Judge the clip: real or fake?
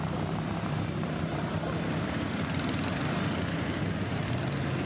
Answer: fake